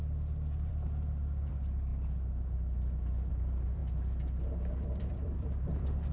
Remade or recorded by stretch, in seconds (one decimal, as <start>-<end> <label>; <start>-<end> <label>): 0.0-0.7 remade; 0.7-1.5 recorded; 1.5-1.9 remade; 1.9-3.3 recorded; 3.3-3.8 remade; 3.8-4.7 recorded; 4.7-6.1 remade